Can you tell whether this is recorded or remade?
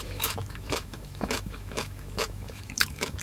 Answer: remade